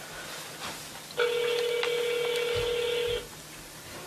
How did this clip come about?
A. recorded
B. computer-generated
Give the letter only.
A